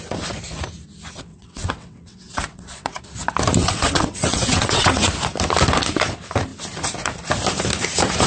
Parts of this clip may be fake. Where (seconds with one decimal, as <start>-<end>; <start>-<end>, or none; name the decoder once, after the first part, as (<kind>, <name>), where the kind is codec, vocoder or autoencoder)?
1.3-3.0 (vocoder, WaveNeXt); 3.6-5.1